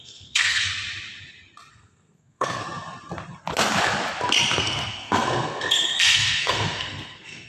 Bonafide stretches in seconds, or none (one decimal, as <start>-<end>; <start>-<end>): 0.7-1.7; 2.6-4.6